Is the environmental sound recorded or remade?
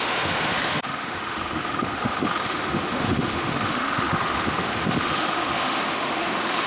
remade